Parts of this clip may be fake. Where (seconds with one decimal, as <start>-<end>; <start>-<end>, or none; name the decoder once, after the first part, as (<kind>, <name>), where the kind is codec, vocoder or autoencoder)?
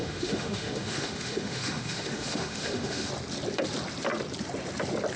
0.0-3.1 (autoencoder, DAC-VAE)